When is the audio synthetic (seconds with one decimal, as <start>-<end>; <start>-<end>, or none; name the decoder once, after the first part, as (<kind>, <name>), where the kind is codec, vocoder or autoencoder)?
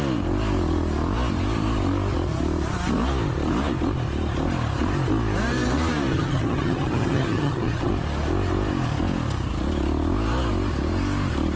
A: 6.1-7.9 (vocoder, HiFi-GAN)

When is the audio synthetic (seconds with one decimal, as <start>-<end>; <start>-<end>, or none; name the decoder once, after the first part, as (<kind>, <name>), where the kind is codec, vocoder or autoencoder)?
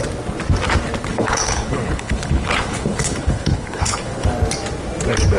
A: 1.1-4.3 (codec, HILCodec)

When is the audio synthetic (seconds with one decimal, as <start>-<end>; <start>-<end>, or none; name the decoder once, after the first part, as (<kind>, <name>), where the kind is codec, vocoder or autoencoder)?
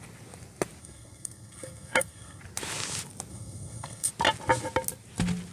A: 0.8-2.4 (codec, SNAC); 3.3-4.1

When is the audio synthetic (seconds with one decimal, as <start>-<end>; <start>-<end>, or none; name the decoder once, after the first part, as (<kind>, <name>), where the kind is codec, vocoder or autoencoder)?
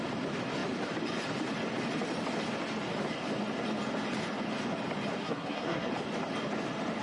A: 5.2-5.9 (codec, SNAC)